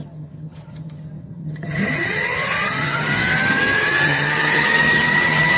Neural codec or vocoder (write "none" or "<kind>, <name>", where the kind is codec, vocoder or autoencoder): vocoder, HiFi-GAN